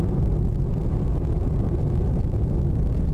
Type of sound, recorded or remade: recorded